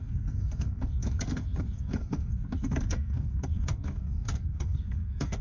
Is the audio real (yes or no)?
no